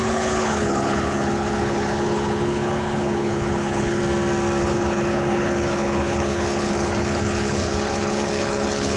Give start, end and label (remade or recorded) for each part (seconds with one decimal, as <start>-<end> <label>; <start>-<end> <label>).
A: 0.0-4.0 remade; 4.0-4.6 recorded; 4.6-9.0 remade